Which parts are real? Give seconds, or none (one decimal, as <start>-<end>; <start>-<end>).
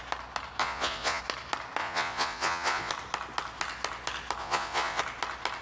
0.0-0.6; 1.2-1.8; 2.9-4.4; 5.0-5.6